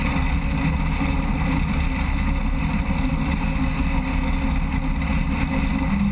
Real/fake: real